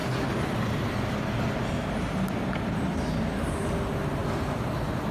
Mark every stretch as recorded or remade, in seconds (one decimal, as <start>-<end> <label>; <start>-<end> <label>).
0.0-5.1 recorded